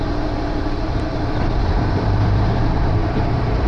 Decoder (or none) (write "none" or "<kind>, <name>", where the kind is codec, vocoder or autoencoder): vocoder, BigVGAN v2